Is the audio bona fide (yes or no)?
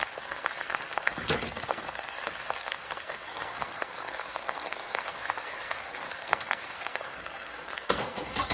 no